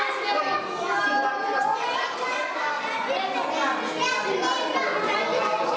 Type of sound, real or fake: real